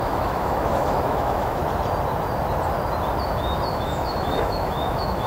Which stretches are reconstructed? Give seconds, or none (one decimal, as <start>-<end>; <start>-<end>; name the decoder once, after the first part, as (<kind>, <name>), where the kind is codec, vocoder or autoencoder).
0.0-1.6 (autoencoder, DAC-VAE); 3.7-5.3